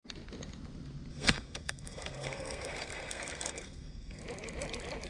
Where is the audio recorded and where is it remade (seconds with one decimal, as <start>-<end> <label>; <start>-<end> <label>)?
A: 0.0-1.1 recorded; 1.1-4.2 remade; 4.2-5.1 recorded